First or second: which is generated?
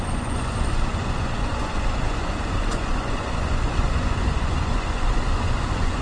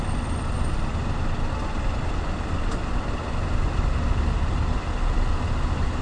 first